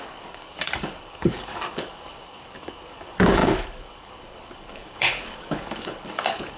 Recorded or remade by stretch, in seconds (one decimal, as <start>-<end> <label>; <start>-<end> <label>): 0.0-6.6 remade